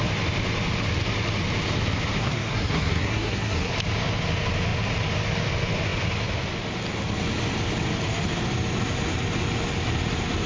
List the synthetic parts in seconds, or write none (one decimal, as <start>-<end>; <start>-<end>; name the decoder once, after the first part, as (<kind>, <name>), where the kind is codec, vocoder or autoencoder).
2.2-3.7 (codec, SNAC)